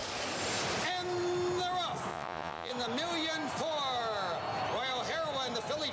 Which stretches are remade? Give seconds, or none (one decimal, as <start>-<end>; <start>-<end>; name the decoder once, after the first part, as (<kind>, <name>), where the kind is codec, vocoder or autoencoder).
2.1-2.7 (vocoder, Vocos)

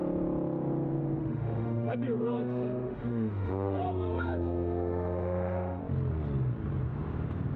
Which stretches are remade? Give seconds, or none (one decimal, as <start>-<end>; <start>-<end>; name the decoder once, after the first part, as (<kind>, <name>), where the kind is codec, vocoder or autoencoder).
1.2-5.8 (autoencoder, DAC-VAE)

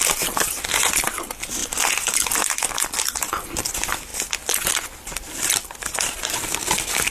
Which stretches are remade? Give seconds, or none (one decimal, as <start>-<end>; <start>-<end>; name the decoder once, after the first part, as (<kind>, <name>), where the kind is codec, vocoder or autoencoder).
none

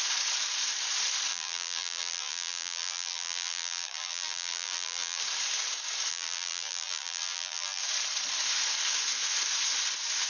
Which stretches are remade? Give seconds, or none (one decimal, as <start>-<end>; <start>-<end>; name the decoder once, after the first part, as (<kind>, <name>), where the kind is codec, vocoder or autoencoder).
1.3-5.2 (vocoder, BigVGAN v2); 6.1-7.8

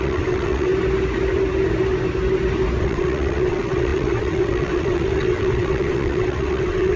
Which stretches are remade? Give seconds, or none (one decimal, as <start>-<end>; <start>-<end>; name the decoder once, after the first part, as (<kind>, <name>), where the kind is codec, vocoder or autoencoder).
0.0-0.7 (vocoder, WaveNeXt); 2.8-7.0

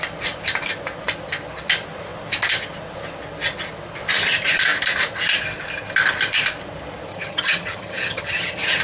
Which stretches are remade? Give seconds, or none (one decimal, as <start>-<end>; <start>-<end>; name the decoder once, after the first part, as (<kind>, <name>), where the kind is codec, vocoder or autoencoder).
7.1-8.8 (vocoder, HiFi-GAN)

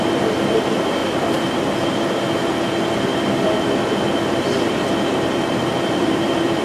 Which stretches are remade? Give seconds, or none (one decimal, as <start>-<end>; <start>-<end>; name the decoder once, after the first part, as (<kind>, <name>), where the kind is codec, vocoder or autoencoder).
0.0-6.6 (vocoder, BigVGAN v2)